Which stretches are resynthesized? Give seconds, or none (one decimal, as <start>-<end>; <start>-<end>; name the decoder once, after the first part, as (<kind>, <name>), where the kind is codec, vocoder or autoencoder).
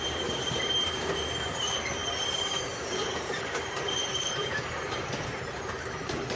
0.0-6.4 (vocoder, BigVGAN v2)